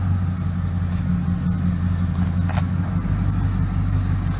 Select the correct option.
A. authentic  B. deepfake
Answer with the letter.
A